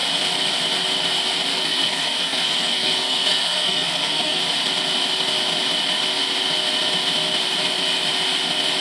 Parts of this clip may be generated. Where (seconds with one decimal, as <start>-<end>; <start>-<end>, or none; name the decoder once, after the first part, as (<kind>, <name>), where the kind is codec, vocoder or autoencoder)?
1.5-4.4 (codec, SNAC)